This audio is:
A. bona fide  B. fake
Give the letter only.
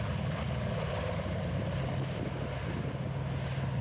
A